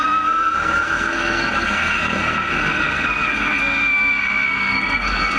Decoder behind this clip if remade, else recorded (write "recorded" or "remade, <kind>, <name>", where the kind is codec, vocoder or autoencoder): remade, codec, SNAC